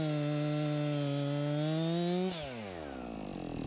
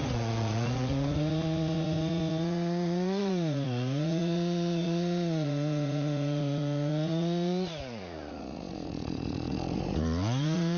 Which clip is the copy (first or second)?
second